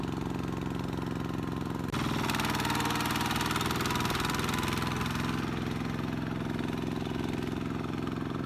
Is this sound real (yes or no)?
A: yes